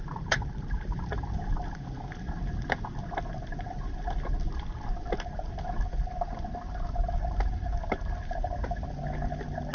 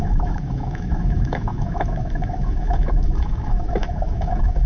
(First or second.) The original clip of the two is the first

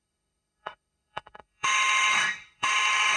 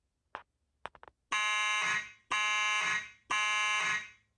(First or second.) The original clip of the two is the second